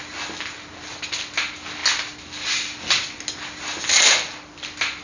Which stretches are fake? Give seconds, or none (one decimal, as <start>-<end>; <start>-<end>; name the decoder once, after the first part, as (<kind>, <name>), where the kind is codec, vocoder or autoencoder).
none